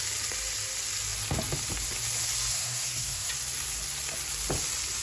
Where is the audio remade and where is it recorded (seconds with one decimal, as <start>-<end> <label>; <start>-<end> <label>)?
0.0-2.5 recorded; 2.5-3.3 remade; 3.3-5.0 recorded